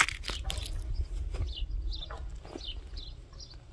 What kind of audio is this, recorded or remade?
recorded